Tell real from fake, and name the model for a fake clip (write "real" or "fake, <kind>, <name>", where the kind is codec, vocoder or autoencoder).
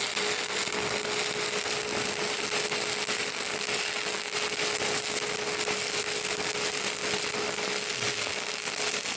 real